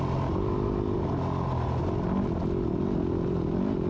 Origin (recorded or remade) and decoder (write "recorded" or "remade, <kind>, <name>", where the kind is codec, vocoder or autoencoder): recorded